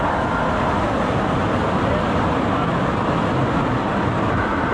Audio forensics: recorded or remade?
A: recorded